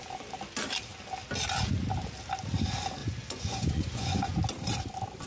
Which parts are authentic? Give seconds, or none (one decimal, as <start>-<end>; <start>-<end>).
0.0-3.0; 4.3-5.3